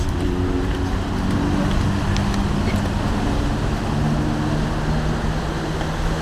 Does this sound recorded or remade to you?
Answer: recorded